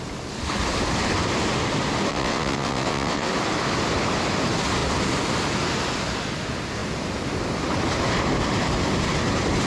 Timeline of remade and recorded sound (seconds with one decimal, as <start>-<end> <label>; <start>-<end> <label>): 0.0-2.1 recorded; 2.1-3.3 remade; 3.3-9.7 recorded